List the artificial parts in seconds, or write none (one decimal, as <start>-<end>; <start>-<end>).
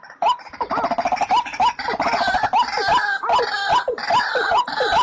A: none